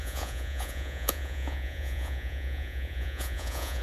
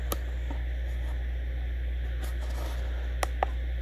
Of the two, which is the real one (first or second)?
second